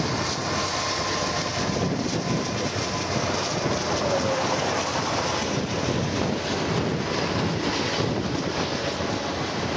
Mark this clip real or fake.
real